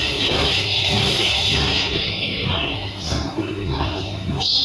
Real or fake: fake